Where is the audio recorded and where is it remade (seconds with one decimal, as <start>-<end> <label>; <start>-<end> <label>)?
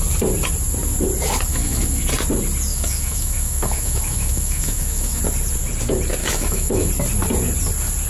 0.0-1.5 recorded; 1.5-2.0 remade; 2.0-2.7 recorded; 2.7-5.2 remade; 5.2-6.2 recorded; 6.2-6.9 remade; 6.9-8.1 recorded